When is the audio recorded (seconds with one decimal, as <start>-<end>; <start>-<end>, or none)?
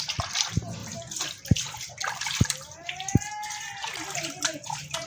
0.0-0.8; 3.3-5.1